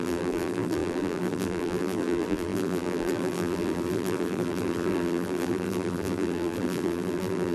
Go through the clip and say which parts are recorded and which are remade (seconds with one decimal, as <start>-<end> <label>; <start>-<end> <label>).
0.0-7.5 remade